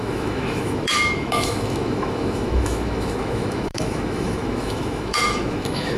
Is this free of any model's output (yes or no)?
no